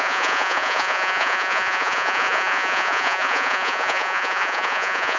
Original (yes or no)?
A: no